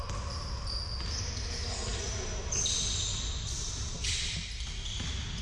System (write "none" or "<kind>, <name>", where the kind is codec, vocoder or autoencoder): none